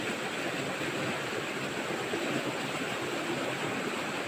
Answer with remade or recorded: remade